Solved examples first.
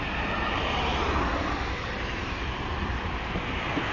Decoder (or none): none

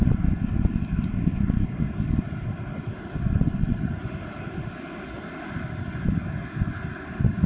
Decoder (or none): none